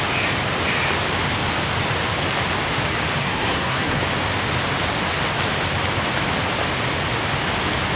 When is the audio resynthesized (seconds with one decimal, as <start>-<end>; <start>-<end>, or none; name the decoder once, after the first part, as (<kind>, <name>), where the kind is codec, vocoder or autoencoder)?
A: 3.2-4.0 (codec, SNAC)